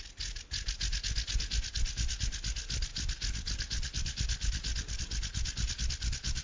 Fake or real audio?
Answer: real